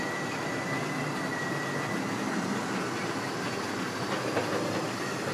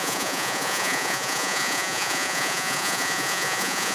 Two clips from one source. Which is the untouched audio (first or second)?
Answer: first